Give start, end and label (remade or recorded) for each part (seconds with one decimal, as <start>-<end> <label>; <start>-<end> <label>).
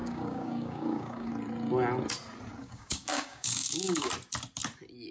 0.0-1.3 remade; 1.3-2.6 recorded; 2.6-4.1 remade; 4.1-5.1 recorded